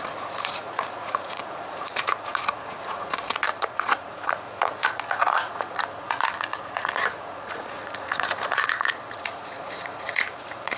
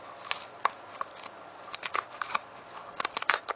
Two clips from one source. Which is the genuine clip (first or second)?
second